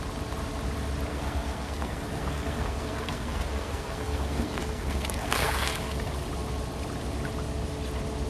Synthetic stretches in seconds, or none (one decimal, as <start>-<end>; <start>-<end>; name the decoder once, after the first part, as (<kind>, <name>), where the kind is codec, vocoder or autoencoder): 1.1-6.1 (codec, SNAC)